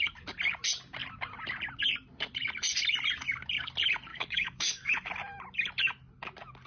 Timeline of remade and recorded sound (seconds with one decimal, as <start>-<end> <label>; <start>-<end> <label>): 0.0-4.1 recorded; 4.1-4.9 remade; 4.9-6.7 recorded